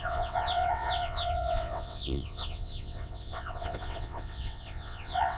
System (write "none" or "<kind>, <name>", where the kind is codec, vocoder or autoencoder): vocoder, WaveNeXt